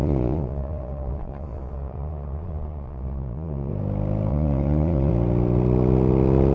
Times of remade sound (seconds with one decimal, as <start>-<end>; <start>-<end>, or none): 0.0-3.7; 4.3-5.1